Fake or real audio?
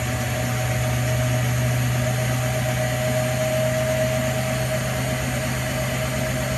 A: real